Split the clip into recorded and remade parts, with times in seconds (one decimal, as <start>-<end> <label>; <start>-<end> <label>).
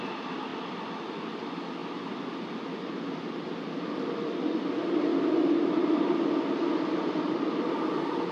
0.0-0.5 remade; 0.5-1.4 recorded; 1.4-5.1 remade; 5.1-7.5 recorded; 7.5-8.3 remade